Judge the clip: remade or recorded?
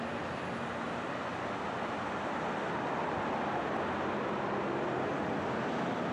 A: recorded